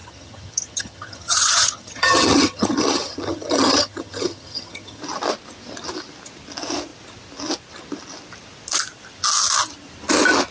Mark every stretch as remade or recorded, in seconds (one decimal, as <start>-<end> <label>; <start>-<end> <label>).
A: 0.0-5.0 remade; 5.0-10.5 recorded